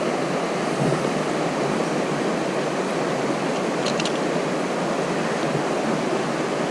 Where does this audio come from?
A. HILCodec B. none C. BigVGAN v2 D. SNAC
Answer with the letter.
B